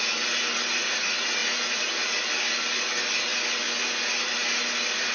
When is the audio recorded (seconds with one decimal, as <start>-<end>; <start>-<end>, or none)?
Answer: 0.0-5.1